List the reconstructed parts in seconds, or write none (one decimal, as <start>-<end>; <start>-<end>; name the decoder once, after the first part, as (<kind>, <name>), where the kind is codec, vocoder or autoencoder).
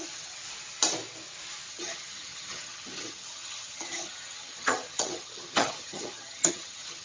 0.0-0.4 (vocoder, HiFi-GAN); 1.7-7.0